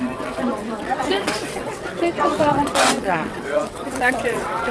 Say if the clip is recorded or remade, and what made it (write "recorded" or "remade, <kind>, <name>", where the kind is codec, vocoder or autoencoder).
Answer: remade, vocoder, WaveNeXt